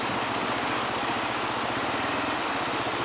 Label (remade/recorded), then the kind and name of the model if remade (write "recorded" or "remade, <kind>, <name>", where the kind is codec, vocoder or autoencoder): recorded